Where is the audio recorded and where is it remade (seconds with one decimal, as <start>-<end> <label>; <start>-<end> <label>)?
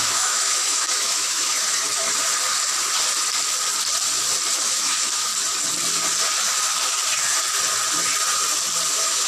0.0-2.1 remade; 2.1-4.6 recorded; 4.6-5.3 remade; 5.3-8.9 recorded; 8.9-9.3 remade